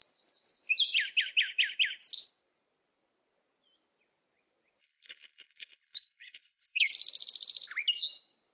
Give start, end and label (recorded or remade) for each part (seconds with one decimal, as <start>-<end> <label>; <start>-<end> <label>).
0.0-4.8 recorded; 4.8-6.9 remade; 6.9-8.5 recorded